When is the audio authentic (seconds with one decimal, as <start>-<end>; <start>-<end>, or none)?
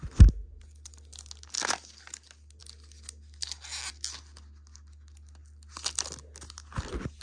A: 0.0-7.2